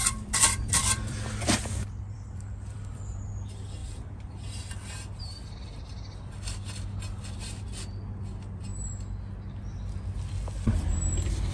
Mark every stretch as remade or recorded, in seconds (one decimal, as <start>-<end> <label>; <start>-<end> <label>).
0.0-3.2 remade; 3.2-11.5 recorded